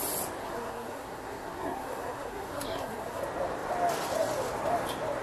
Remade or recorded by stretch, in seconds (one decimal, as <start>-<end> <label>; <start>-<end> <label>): 0.0-0.4 recorded; 0.4-3.2 remade; 3.2-5.2 recorded